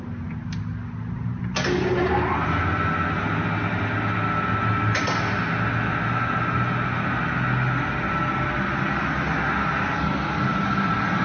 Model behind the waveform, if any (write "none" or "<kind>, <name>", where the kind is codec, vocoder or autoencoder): none